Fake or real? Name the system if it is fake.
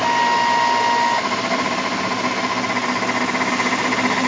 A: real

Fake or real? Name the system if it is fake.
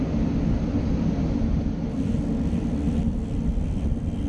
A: real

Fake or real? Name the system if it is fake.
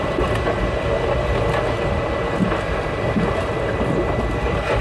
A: real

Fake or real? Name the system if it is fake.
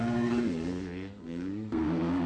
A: fake, codec, SNAC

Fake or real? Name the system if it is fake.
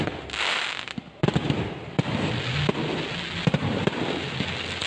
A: real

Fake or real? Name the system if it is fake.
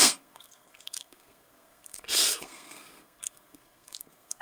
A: fake, codec, SNAC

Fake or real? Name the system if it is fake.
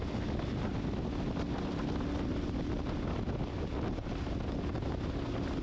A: real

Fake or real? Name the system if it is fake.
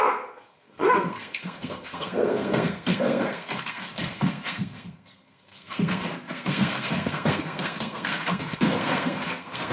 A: fake, codec, SNAC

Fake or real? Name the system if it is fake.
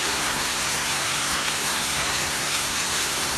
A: fake, codec, SNAC